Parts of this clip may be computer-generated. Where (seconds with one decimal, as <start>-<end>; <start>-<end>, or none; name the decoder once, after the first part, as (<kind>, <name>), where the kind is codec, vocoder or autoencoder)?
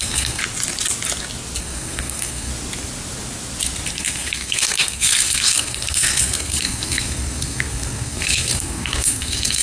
0.0-0.4 (codec, SNAC); 1.6-2.5; 3.9-9.6